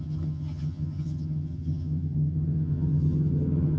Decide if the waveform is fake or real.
fake